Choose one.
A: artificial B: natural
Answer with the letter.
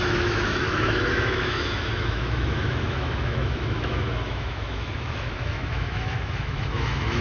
A